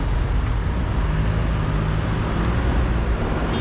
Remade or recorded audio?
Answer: recorded